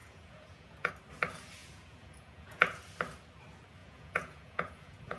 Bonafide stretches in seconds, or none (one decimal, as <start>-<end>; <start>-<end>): 0.9-1.6; 2.8-3.8